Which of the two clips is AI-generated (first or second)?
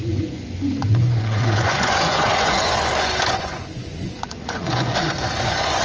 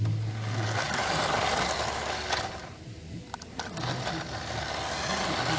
first